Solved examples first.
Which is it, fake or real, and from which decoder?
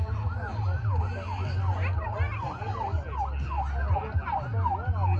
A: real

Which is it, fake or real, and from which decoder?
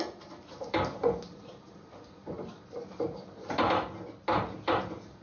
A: real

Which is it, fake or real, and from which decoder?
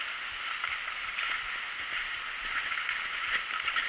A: real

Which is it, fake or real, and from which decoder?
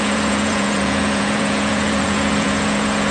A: fake, vocoder, Vocos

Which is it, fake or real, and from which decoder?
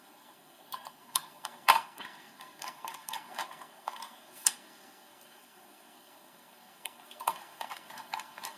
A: fake, codec, SNAC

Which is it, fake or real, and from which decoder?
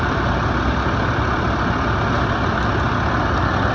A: real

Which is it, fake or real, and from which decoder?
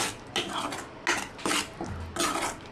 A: real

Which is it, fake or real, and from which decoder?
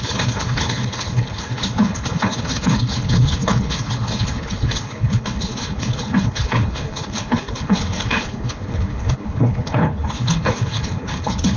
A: fake, codec, HILCodec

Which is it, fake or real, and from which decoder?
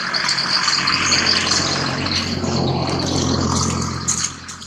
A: real